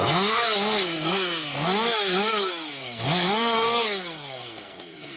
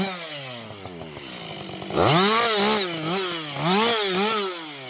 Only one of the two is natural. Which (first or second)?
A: second